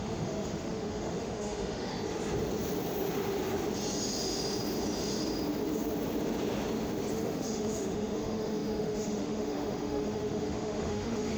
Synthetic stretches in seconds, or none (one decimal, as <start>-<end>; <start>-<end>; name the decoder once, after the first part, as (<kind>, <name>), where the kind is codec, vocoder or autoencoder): 0.0-1.9 (autoencoder, DAC-VAE); 7.1-11.4